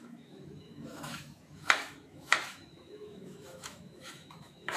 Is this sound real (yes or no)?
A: no